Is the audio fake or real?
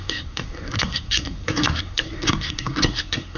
fake